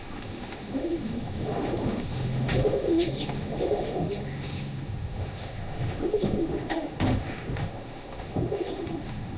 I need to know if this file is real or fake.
fake